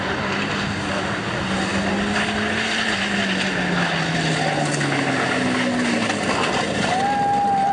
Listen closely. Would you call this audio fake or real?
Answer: real